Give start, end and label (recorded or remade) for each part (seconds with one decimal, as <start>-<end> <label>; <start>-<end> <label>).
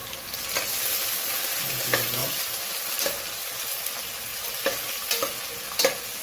0.0-6.2 recorded